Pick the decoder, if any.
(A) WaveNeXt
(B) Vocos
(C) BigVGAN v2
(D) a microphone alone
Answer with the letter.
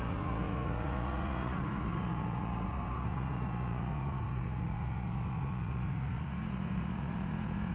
B